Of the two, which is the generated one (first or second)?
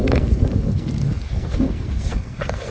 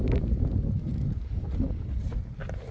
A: first